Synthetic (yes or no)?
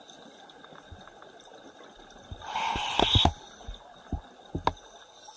no